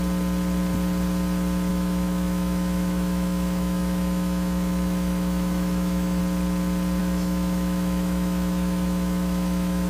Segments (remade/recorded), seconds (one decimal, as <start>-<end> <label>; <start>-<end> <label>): 0.0-1.7 recorded; 1.7-6.2 remade; 6.2-7.0 recorded; 7.0-9.9 remade